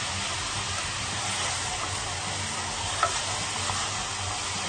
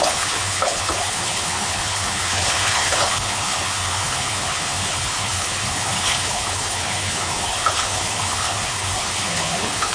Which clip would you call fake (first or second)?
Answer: second